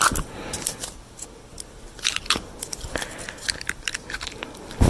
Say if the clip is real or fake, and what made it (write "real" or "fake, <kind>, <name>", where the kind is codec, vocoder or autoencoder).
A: real